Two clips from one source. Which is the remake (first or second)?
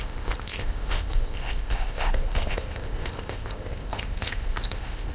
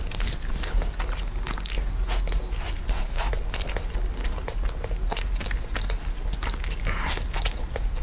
first